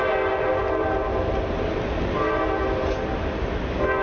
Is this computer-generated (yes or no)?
no